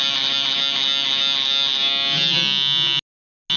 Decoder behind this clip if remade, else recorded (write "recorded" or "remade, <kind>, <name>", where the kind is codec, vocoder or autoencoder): recorded